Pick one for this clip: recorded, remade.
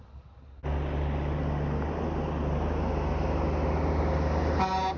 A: recorded